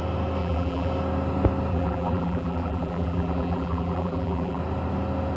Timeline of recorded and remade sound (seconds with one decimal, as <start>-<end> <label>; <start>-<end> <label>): 0.0-0.4 recorded; 0.4-0.9 remade; 0.9-1.7 recorded; 1.7-4.6 remade; 4.6-5.4 recorded